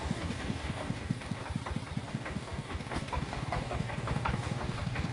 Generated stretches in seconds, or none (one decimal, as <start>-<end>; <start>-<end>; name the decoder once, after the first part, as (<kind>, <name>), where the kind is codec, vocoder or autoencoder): 0.0-1.4 (codec, DAC); 2.1-5.1